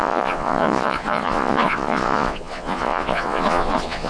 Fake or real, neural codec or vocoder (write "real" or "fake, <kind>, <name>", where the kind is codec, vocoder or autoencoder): fake, vocoder, Vocos